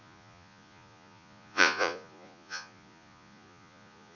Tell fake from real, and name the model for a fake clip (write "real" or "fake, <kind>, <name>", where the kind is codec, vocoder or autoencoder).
fake, vocoder, Vocos